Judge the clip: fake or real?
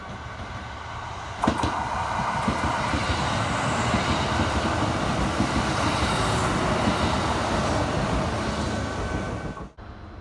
real